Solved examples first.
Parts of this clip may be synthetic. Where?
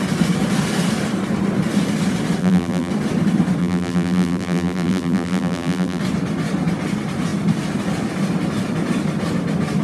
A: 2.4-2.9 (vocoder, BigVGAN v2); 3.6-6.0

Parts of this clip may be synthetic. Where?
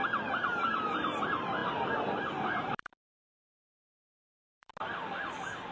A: 0.0-4.7 (vocoder, BigVGAN v2); 5.3-5.7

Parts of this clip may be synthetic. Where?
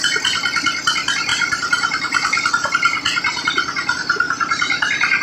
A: 1.3-2.5 (vocoder, BigVGAN v2)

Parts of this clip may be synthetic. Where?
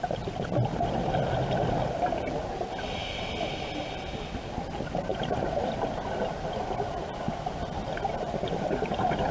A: none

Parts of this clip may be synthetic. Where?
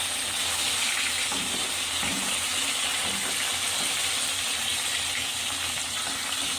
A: none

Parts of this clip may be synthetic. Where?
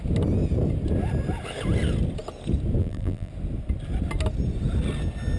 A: 2.8-3.3 (vocoder, BigVGAN v2)